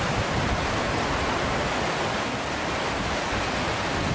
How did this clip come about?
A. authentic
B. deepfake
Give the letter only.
A